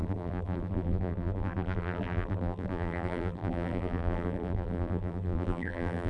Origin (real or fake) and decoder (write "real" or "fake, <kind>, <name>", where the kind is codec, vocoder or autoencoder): fake, vocoder, BigVGAN v2